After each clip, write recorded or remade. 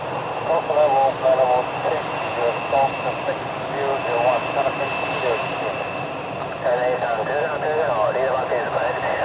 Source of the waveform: recorded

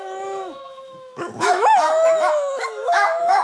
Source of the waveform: remade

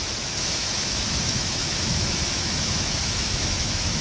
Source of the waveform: remade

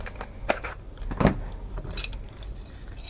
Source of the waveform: recorded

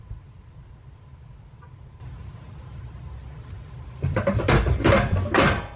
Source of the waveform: recorded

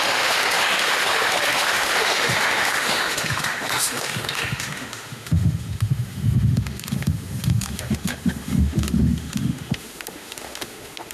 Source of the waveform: remade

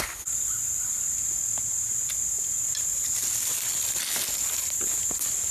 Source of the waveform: recorded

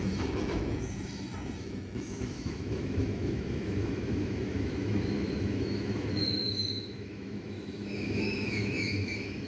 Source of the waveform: remade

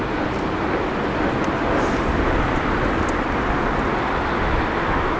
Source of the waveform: recorded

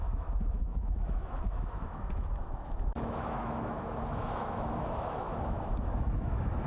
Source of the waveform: remade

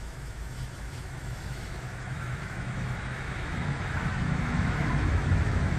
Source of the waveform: remade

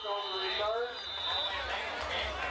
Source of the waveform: recorded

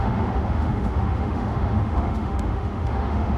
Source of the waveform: remade